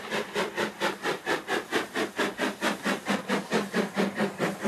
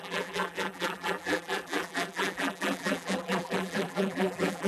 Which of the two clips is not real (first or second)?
second